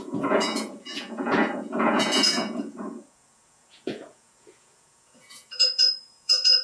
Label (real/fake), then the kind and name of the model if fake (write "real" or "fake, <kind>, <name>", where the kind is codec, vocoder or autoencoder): fake, vocoder, Vocos